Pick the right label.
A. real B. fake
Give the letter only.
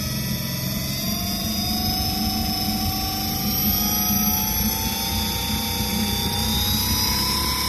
A